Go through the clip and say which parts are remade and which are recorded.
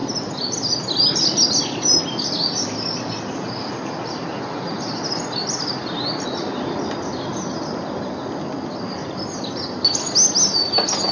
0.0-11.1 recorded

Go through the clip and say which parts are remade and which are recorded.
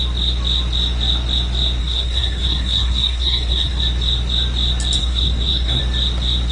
0.0-1.8 recorded; 1.8-3.8 remade; 3.8-5.0 recorded; 5.0-5.8 remade; 5.8-6.5 recorded